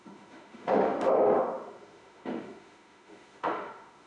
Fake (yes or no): yes